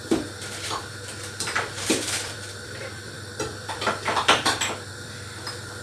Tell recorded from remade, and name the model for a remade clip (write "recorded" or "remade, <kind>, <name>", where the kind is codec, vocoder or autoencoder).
remade, vocoder, BigVGAN v2